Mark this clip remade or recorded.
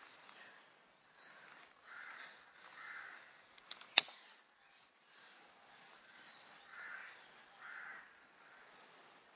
remade